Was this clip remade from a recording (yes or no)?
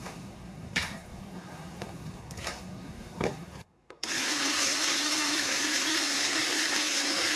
yes